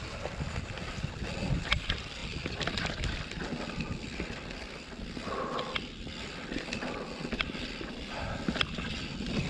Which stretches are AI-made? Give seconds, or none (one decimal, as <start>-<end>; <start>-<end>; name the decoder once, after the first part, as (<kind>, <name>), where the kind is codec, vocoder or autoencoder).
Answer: 0.0-9.5 (vocoder, BigVGAN v2)